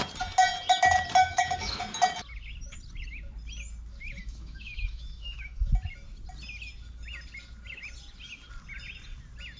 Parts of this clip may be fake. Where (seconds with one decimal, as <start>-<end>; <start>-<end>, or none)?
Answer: 1.2-1.8; 4.2-5.7